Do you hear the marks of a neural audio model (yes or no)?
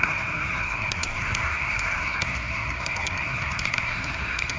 yes